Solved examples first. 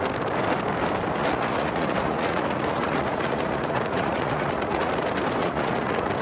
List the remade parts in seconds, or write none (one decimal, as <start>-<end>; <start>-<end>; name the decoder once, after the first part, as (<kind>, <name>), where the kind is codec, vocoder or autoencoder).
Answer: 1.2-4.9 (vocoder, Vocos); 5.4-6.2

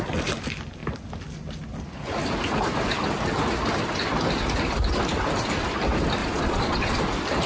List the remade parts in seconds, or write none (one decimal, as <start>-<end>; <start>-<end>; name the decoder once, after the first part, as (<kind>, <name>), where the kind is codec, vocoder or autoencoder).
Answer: 6.2-7.0 (vocoder, Vocos)

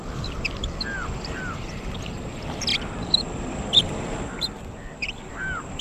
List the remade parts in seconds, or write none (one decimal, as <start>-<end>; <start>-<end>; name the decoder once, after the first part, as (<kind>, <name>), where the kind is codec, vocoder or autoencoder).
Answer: none

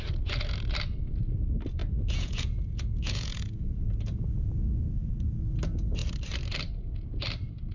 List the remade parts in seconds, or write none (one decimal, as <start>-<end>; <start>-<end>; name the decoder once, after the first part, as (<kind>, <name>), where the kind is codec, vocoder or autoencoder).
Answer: 1.8-5.1 (vocoder, Vocos)